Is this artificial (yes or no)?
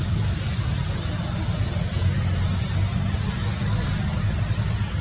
no